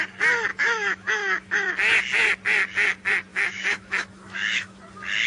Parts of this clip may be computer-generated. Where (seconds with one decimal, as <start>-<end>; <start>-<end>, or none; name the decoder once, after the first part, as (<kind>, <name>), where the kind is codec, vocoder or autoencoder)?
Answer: 0.5-1.7 (autoencoder, DAC-VAE); 3.3-4.8